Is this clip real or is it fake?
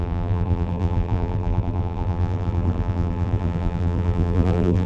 fake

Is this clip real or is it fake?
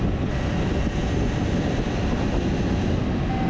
real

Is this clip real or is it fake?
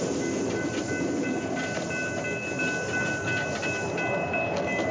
real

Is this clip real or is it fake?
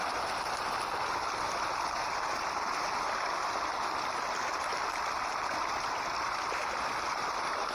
fake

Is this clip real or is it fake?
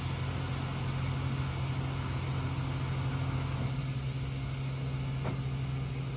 real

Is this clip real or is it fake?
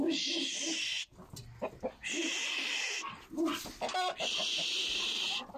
real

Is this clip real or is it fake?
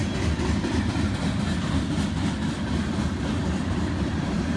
real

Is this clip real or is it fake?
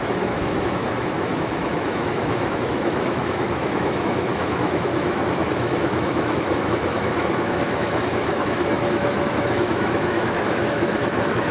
fake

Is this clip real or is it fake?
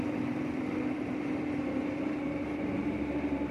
fake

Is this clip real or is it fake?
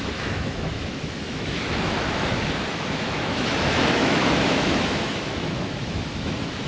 fake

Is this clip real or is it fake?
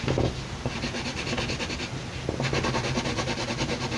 real